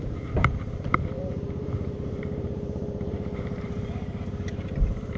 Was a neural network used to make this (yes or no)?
yes